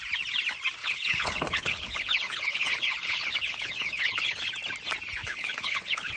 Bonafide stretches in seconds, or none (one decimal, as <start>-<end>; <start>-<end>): 0.0-0.8; 4.5-5.2